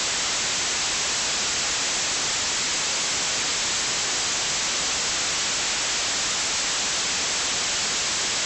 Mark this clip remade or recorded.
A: recorded